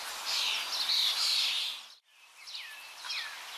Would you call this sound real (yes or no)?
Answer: yes